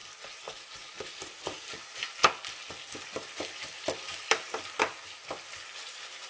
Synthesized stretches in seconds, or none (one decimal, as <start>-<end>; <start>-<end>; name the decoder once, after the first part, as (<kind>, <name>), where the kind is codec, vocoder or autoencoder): none

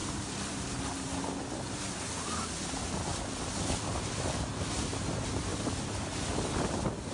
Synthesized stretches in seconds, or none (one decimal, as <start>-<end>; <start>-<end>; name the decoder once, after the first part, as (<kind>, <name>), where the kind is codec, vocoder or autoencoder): 3.1-3.9 (vocoder, BigVGAN v2); 5.5-6.1

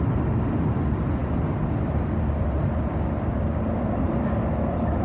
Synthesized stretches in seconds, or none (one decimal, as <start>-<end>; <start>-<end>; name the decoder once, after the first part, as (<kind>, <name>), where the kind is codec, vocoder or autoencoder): none

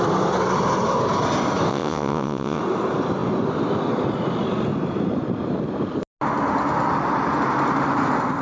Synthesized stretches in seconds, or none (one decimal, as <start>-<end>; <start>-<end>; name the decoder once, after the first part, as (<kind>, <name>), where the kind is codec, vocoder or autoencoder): 1.7-2.6 (vocoder, WaveNeXt)

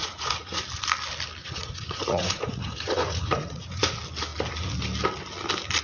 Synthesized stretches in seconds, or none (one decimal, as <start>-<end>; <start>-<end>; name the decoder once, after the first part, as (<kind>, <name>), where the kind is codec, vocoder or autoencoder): 0.0-0.6 (vocoder, Vocos); 1.4-3.8

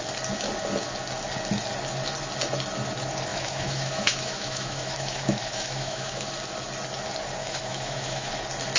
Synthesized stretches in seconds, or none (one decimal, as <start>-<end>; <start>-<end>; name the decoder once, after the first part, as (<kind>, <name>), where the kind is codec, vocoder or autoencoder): 3.3-6.3 (autoencoder, DAC-VAE); 7.4-8.3